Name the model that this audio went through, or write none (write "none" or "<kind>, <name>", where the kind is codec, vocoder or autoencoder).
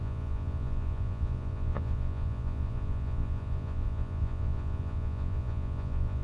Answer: vocoder, Vocos